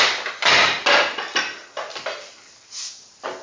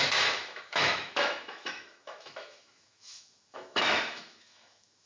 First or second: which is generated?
second